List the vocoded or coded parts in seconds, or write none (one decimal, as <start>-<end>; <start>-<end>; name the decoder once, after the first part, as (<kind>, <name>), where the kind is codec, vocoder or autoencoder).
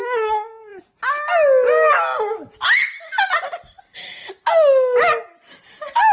none